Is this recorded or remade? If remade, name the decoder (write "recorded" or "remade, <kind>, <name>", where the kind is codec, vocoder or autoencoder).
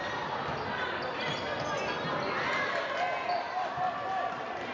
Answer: recorded